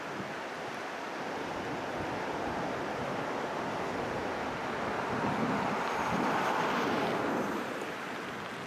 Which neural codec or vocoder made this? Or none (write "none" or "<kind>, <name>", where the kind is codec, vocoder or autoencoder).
none